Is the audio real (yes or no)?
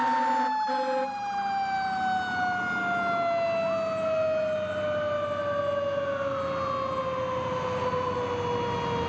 yes